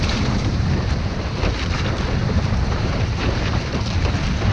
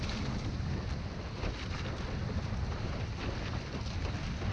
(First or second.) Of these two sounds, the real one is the second